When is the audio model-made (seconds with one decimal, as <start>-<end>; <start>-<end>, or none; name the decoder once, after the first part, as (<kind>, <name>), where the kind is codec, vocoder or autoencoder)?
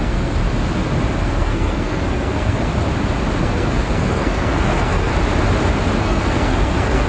0.0-0.4 (codec, SNAC); 1.2-2.7; 3.4-5.1; 6.0-7.1